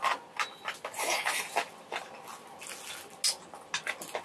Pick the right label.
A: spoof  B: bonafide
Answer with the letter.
B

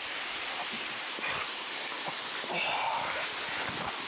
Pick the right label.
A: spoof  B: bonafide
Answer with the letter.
B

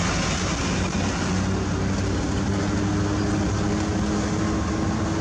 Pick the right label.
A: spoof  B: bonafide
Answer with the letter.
B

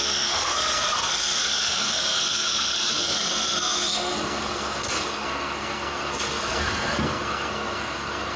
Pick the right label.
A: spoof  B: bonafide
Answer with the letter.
A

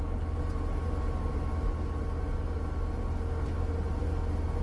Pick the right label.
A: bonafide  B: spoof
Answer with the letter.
A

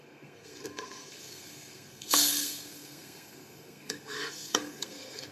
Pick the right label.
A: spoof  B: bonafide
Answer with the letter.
A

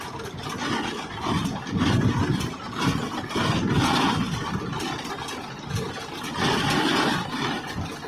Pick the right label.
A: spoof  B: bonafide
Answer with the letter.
B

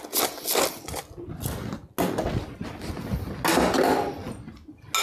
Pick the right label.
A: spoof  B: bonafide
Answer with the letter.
B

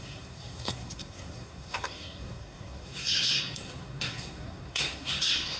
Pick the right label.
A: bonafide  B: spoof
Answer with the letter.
B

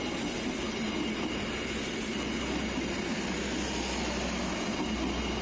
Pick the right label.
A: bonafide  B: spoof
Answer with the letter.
A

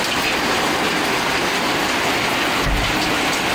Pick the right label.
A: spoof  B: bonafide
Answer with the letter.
B